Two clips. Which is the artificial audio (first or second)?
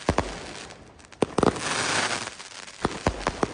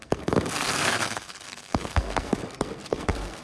second